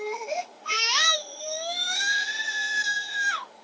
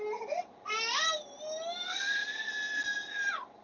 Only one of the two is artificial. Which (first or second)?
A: first